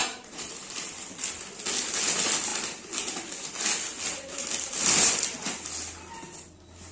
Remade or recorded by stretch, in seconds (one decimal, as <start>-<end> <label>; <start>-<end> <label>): 0.0-0.5 remade; 0.5-6.9 recorded

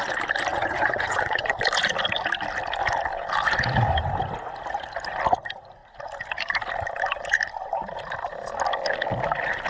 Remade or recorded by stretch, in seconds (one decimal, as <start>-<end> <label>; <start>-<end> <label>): 0.0-0.5 recorded; 0.5-1.6 remade; 1.6-9.7 recorded

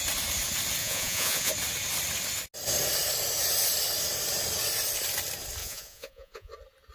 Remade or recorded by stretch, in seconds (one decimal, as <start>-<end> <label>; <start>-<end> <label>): 0.0-0.8 recorded; 0.8-1.5 remade; 1.5-5.6 recorded; 5.6-6.5 remade; 6.5-6.9 recorded

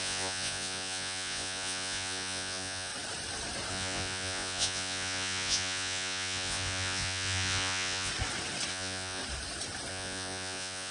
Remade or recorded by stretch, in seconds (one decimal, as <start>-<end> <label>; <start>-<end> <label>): 0.0-2.9 remade; 2.9-3.7 recorded; 3.7-8.1 remade; 8.1-8.7 recorded; 8.7-9.2 remade; 9.2-9.9 recorded; 9.9-10.9 remade

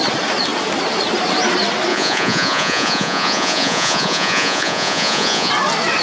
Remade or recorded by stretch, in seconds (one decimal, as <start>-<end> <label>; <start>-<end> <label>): 0.0-1.9 recorded; 1.9-5.5 remade; 5.5-6.0 recorded

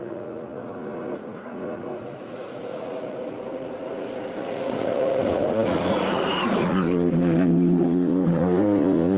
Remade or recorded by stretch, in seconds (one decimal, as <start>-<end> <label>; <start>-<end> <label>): 0.0-9.2 remade

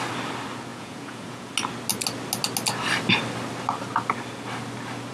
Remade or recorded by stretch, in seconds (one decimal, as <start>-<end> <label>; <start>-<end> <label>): 0.0-0.7 recorded; 0.7-1.5 remade; 1.5-5.1 recorded